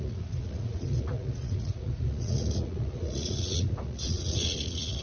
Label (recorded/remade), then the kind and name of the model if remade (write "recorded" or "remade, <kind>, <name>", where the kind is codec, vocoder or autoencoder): remade, vocoder, Vocos